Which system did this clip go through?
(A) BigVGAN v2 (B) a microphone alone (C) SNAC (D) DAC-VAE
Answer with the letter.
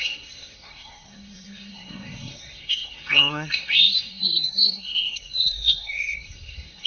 C